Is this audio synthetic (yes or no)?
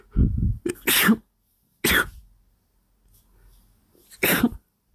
no